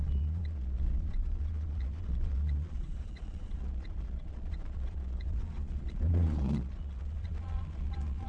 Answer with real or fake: fake